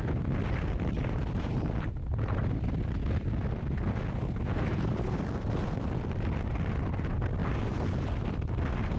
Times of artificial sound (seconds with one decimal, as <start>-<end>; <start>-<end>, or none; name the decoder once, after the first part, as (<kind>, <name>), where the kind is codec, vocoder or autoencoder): none